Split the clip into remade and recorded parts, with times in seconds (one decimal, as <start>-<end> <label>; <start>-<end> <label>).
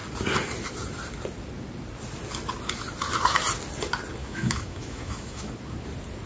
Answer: 0.0-4.2 recorded; 4.2-5.5 remade; 5.5-6.3 recorded